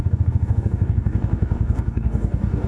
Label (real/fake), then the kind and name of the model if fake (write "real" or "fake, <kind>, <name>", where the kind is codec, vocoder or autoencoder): fake, codec, DAC